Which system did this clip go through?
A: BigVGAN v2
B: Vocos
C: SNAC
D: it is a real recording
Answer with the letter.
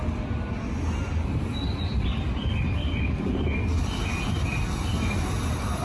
D